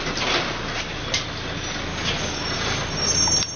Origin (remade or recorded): recorded